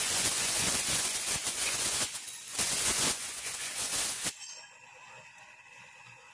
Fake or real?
fake